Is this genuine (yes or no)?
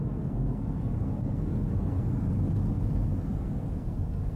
no